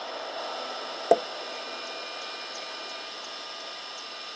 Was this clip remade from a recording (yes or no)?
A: no